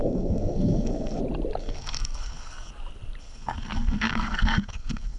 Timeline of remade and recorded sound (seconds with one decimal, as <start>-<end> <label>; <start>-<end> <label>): 0.0-1.2 remade; 1.2-1.6 recorded; 1.6-2.7 remade; 2.7-3.2 recorded; 3.2-5.2 remade